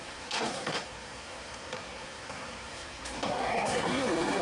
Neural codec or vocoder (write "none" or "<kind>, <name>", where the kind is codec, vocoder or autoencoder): codec, SNAC